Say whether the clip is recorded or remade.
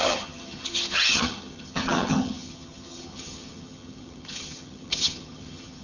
remade